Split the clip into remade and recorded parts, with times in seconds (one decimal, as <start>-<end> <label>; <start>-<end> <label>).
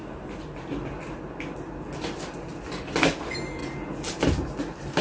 0.0-5.0 recorded